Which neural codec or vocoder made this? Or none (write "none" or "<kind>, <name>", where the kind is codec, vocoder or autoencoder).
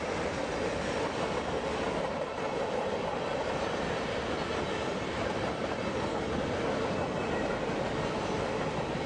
none